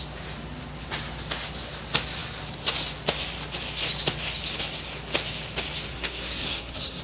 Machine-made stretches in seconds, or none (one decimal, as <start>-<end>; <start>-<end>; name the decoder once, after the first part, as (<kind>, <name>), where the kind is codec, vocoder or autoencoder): 5.9-7.0 (codec, SNAC)